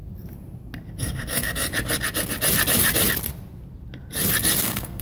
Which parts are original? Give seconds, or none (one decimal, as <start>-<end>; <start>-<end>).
0.0-1.0; 1.7-4.6